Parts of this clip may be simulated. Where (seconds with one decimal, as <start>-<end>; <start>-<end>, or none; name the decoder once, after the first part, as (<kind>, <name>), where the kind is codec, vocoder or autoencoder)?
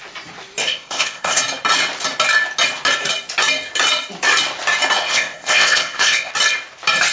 0.6-1.4 (codec, ZipCodec); 5.0-6.3